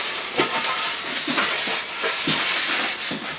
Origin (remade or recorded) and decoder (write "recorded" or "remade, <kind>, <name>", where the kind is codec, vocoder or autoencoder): recorded